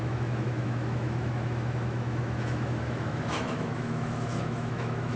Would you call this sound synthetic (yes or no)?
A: yes